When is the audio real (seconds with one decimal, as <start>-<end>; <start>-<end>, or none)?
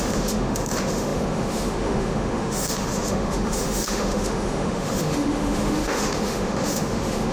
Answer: none